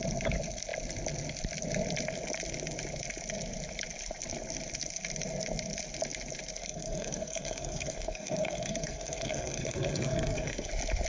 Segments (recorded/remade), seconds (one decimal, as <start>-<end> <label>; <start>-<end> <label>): 0.0-6.6 recorded; 6.6-10.7 remade; 10.7-11.1 recorded